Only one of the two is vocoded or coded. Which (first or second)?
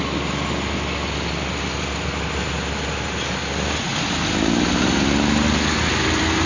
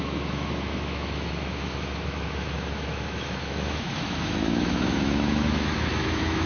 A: second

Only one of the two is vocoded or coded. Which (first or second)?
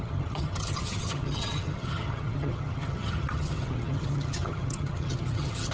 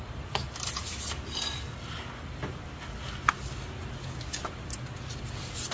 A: first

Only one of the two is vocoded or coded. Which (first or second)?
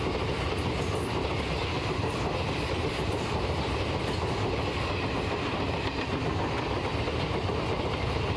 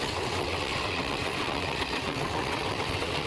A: second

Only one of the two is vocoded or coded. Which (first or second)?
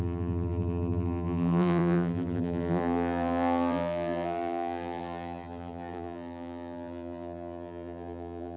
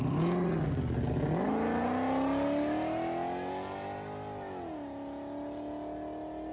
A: first